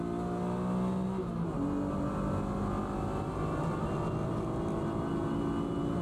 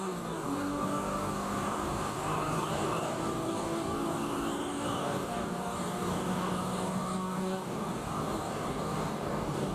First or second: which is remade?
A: second